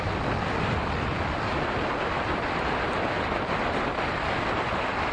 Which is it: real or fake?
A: real